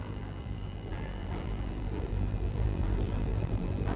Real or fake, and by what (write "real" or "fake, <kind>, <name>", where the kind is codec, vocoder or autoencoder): fake, vocoder, BigVGAN v2